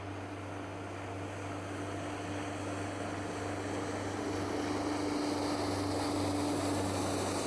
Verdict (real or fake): real